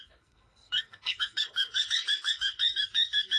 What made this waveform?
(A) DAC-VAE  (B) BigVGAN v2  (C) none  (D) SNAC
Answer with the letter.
D